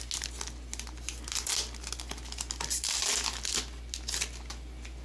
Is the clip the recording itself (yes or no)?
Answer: yes